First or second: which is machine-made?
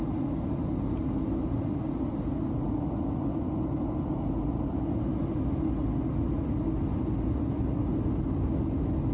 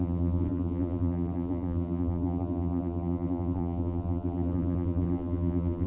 second